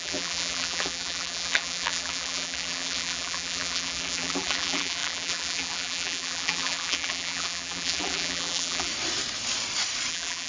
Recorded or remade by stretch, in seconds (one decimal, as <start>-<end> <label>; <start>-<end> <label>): 0.0-8.9 remade; 8.9-10.1 recorded; 10.1-10.5 remade